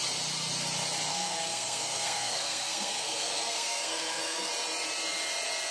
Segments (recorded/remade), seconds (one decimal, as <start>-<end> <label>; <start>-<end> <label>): 0.0-1.1 recorded; 1.1-4.5 remade; 4.5-5.7 recorded